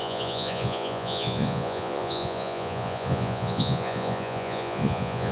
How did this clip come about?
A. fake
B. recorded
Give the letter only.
A